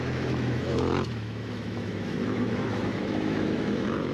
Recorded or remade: remade